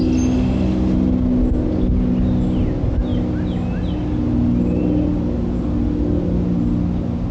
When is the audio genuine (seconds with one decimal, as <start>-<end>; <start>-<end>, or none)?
0.0-7.3